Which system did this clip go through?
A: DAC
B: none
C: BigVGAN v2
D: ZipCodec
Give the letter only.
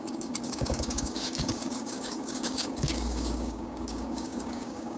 A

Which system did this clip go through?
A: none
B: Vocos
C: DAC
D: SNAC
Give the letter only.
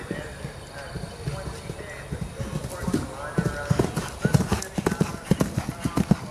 A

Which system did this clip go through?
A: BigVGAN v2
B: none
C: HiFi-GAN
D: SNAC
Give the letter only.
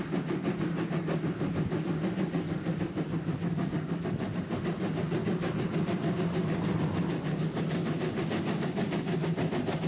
B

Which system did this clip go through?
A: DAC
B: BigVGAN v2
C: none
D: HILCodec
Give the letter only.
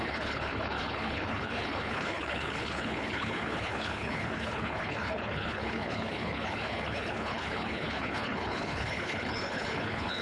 D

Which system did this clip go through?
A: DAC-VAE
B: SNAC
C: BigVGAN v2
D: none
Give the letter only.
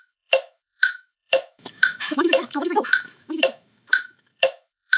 A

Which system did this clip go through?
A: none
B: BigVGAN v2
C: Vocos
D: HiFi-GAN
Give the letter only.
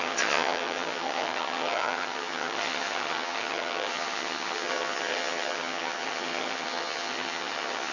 D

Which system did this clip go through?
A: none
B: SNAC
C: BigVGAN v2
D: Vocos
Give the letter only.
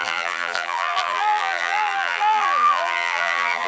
C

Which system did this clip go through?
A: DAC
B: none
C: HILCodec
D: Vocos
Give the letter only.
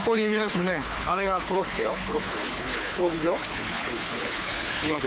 C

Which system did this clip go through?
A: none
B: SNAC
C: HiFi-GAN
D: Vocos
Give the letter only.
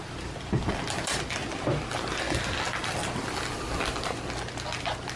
A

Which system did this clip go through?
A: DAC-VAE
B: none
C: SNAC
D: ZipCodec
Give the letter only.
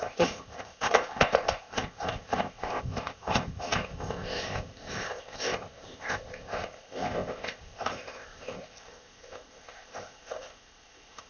D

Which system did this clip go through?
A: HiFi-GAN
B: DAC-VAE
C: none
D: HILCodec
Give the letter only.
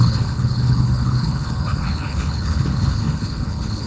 D